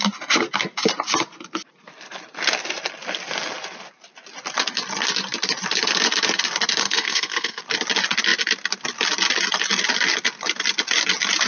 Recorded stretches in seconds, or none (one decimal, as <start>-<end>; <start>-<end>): 0.0-6.8; 7.6-11.5